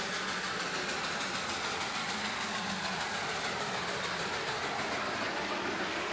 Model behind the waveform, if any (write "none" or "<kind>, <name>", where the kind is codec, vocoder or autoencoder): none